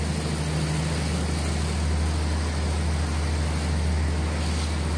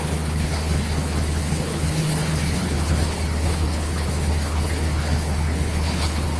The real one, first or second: first